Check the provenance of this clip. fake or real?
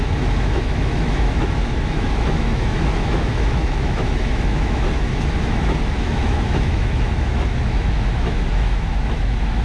fake